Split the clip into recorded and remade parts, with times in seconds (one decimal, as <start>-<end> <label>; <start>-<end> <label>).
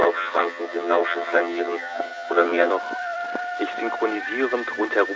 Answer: 0.0-2.7 remade; 2.7-5.2 recorded